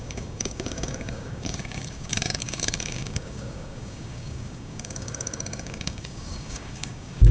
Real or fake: fake